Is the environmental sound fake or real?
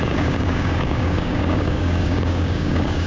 fake